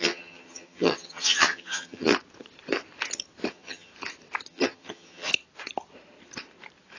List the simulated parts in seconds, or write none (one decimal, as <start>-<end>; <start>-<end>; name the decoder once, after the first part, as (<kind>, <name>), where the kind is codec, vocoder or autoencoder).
0.0-2.1 (vocoder, HiFi-GAN); 3.5-3.9; 4.5-5.3